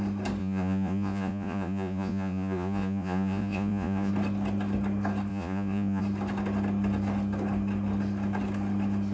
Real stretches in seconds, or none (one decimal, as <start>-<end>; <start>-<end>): 0.0-0.4; 4.1-5.3; 6.0-9.1